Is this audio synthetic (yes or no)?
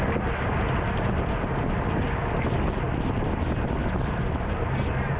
no